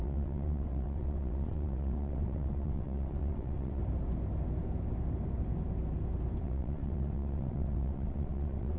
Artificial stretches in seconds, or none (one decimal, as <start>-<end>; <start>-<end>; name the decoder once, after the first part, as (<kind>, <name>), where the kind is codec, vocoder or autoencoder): 0.0-3.8 (vocoder, WaveNeXt); 6.4-8.8